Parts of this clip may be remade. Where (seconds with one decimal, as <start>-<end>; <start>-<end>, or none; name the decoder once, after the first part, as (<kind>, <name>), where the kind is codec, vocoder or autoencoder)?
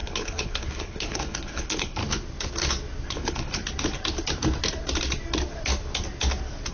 0.0-2.0 (codec, HILCodec); 3.1-3.6